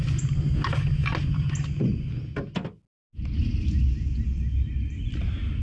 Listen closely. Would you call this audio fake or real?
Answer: real